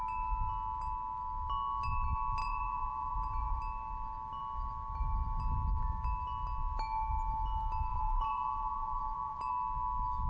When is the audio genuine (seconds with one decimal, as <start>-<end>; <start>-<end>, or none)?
0.0-2.4; 3.6-7.9; 9.5-10.3

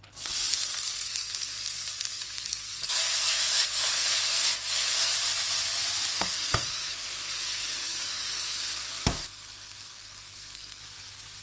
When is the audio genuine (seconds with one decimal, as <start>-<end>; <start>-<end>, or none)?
0.0-0.5; 5.1-6.1; 10.8-11.4

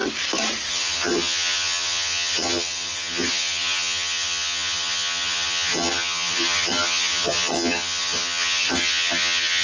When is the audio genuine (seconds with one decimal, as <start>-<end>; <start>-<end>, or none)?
0.0-0.7

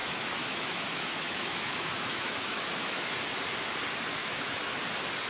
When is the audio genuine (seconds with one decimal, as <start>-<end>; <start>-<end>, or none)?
3.2-4.2; 4.8-5.3

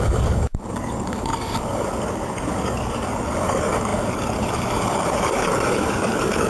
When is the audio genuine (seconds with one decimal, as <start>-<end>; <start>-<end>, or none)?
none

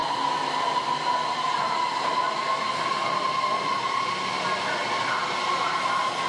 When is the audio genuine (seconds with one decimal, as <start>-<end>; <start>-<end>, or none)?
0.0-6.3

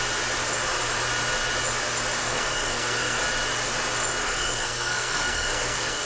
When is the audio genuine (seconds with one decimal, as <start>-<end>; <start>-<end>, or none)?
0.0-2.2; 3.2-4.2